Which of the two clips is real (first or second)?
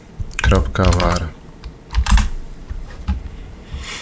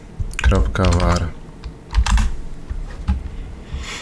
second